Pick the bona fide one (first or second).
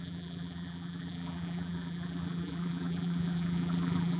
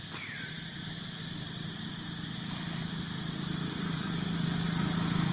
second